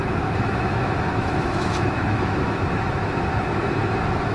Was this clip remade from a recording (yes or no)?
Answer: yes